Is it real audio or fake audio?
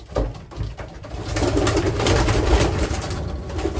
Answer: real